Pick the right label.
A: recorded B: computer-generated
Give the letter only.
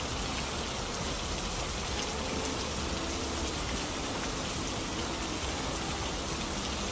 A